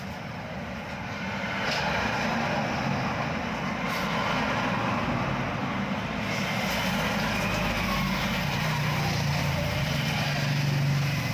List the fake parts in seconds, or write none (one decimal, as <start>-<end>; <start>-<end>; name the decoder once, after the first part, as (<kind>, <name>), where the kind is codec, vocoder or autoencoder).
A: 9.4-10.2 (vocoder, BigVGAN v2)